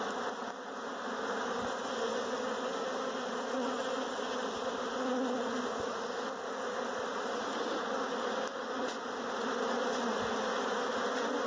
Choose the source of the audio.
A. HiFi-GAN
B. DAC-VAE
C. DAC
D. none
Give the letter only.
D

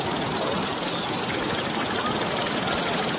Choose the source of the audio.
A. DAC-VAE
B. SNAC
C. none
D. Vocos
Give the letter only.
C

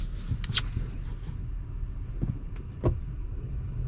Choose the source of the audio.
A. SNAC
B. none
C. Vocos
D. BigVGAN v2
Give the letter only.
B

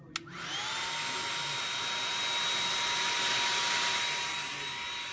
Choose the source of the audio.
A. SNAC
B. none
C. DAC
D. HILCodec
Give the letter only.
B